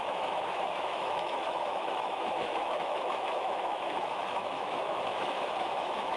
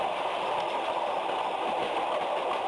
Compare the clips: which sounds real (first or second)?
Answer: second